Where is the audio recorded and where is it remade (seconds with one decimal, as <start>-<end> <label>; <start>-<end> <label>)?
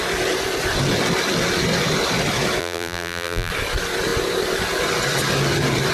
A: 0.0-2.6 recorded; 2.6-3.5 remade; 3.5-5.9 recorded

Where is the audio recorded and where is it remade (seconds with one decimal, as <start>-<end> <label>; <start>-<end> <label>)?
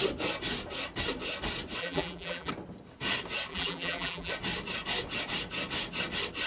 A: 0.0-1.8 recorded; 1.8-2.5 remade; 2.5-3.5 recorded; 3.5-4.3 remade; 4.3-6.5 recorded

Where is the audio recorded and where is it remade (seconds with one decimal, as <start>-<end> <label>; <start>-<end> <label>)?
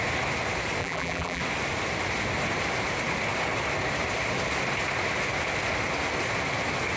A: 0.0-0.8 recorded; 0.8-1.4 remade; 1.4-7.0 recorded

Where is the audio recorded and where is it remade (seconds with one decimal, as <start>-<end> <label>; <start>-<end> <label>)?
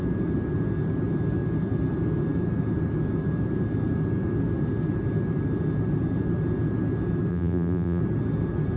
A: 0.0-7.3 recorded; 7.3-8.0 remade; 8.0-8.8 recorded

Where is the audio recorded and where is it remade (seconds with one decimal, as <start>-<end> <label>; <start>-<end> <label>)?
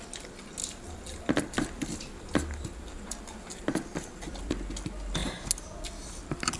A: 0.0-0.6 recorded; 0.6-4.3 remade; 4.3-6.6 recorded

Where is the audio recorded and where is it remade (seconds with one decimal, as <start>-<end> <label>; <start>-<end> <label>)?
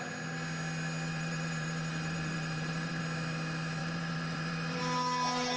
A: 0.0-1.1 recorded; 1.1-3.0 remade; 3.0-3.8 recorded; 3.8-4.8 remade; 4.8-5.6 recorded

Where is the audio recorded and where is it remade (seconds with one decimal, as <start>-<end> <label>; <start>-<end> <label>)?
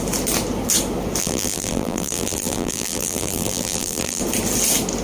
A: 0.0-1.2 recorded; 1.2-4.2 remade; 4.2-5.0 recorded